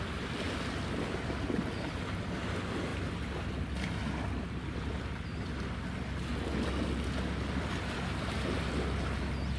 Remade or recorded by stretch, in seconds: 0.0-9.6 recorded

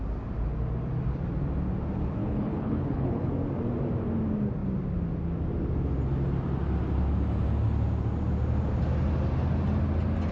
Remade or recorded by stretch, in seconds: 0.0-2.2 recorded; 2.2-3.3 remade; 3.3-10.3 recorded

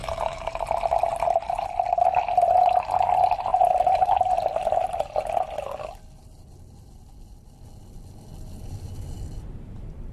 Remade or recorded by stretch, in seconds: 0.0-0.9 remade; 0.9-10.1 recorded

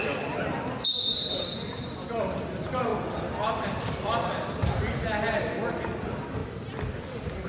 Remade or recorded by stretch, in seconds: 0.0-7.5 remade

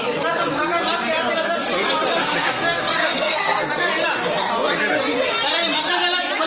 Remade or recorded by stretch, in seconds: 0.0-2.2 recorded; 2.2-3.7 remade; 3.7-6.5 recorded

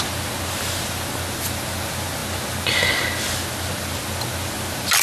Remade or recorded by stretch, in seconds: 0.0-5.0 recorded

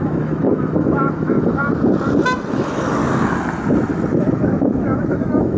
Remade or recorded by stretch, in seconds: 0.0-1.6 remade; 1.6-2.5 recorded; 2.5-3.0 remade; 3.0-4.2 recorded; 4.2-5.6 remade